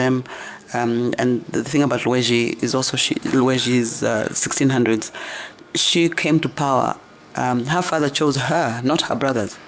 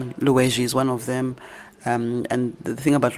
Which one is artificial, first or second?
first